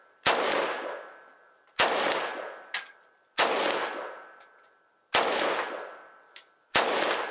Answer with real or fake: fake